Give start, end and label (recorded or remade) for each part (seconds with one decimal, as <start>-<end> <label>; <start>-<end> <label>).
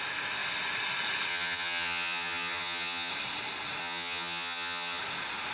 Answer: 0.0-1.3 recorded; 1.3-3.1 remade; 3.1-3.8 recorded; 3.8-5.0 remade; 5.0-5.5 recorded